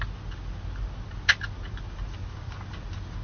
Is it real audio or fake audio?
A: real